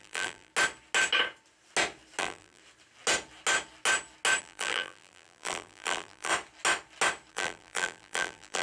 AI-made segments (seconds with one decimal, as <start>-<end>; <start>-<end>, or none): 0.0-0.5; 2.2-2.6; 4.4-6.3; 7.3-8.6

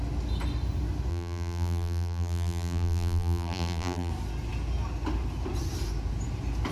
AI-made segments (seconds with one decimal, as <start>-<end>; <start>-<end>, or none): 1.1-4.1

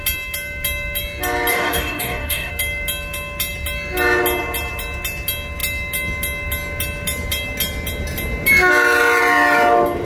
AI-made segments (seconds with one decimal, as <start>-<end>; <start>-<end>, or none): 1.5-2.5

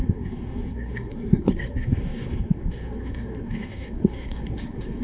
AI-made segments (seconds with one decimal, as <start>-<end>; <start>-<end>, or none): 0.0-5.0

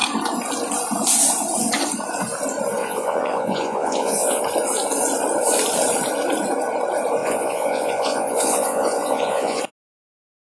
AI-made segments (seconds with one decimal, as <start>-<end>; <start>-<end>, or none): 2.8-4.4; 7.2-9.6